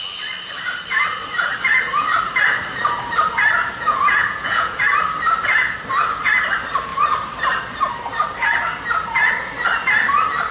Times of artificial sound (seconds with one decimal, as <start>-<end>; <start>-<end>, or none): 3.6-4.8